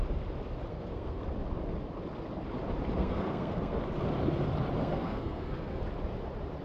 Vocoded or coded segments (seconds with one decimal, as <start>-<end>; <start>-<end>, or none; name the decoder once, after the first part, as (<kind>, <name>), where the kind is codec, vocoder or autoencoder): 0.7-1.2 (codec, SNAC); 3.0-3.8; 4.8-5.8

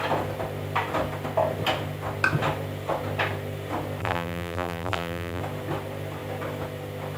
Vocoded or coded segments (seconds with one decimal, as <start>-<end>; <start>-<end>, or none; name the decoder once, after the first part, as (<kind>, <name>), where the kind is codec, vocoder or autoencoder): 4.0-5.4 (vocoder, BigVGAN v2)

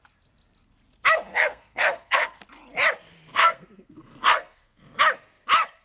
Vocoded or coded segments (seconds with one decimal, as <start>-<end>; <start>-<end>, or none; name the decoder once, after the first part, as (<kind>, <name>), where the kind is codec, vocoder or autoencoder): 1.3-2.4 (codec, SNAC); 3.3-5.0